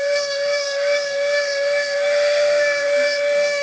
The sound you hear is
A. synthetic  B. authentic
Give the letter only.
A